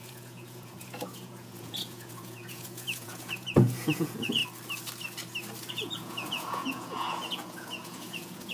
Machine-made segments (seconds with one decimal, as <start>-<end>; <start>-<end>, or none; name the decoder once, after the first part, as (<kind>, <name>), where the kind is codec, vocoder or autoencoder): 0.0-4.4 (vocoder, Vocos); 5.7-8.5